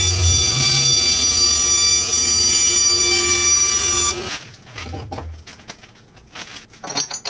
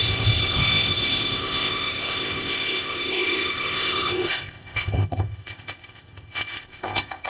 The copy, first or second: second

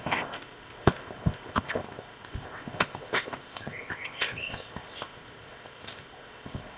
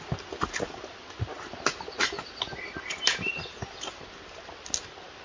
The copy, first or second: first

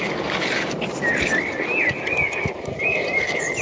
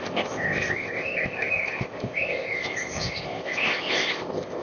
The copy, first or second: second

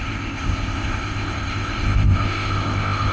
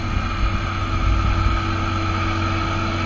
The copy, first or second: first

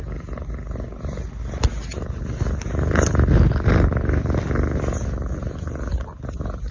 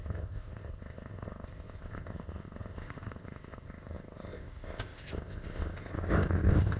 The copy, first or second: second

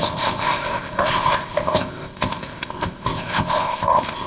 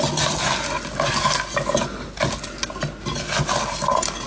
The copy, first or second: first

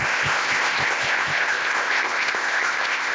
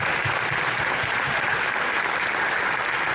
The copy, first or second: first